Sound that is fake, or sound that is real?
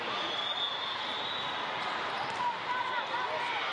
real